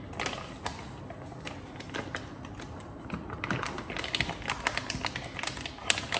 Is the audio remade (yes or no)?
no